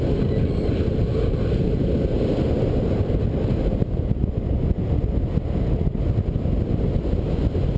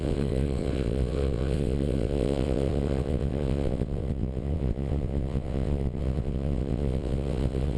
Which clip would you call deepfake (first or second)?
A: second